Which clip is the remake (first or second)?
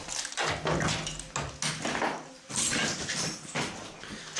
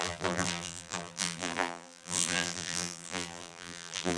second